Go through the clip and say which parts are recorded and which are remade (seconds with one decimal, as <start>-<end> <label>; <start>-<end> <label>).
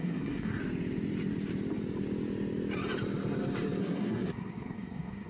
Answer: 0.0-0.6 remade; 0.6-3.8 recorded; 3.8-5.3 remade